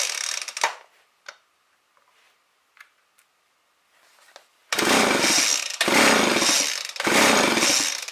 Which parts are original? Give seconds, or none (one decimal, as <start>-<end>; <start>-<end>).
0.0-8.1